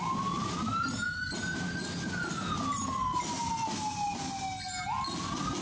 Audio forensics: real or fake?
real